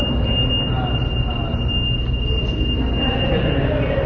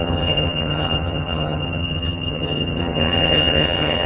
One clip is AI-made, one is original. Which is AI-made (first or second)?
second